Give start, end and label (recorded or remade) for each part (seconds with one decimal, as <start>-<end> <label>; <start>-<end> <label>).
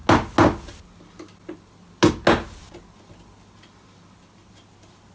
0.0-5.1 recorded